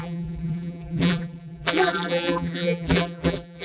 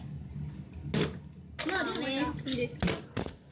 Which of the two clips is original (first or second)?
second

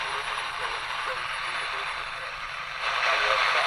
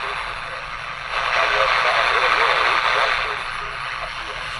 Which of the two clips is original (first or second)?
second